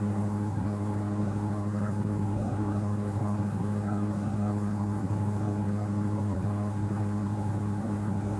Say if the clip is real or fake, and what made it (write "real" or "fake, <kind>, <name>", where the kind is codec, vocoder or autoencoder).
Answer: fake, codec, SNAC